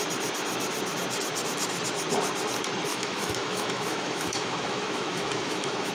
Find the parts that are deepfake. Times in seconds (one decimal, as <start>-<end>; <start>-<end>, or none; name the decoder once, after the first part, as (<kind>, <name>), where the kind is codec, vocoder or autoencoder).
2.9-5.9 (autoencoder, DAC-VAE)